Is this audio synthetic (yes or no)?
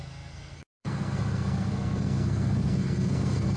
yes